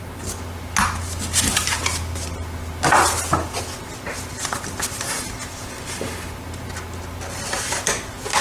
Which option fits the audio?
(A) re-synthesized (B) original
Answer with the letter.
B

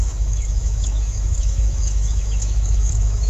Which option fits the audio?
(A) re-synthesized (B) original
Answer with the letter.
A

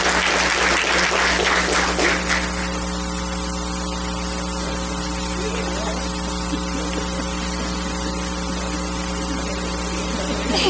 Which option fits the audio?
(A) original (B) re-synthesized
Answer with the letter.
A